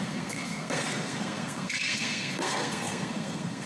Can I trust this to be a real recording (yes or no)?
no